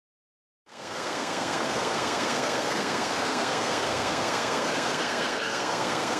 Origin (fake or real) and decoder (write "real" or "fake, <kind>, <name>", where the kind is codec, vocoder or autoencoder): fake, codec, SNAC